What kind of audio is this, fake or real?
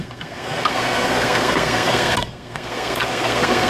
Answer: fake